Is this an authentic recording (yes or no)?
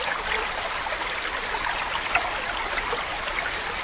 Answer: yes